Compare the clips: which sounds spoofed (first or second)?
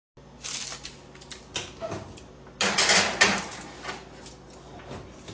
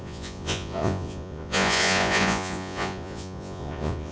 second